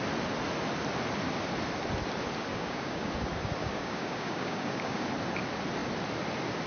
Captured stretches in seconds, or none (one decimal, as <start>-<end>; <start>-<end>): 0.0-2.5; 3.1-3.6; 5.1-6.7